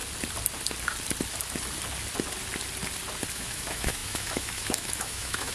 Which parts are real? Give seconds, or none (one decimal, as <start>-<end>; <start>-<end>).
0.0-3.3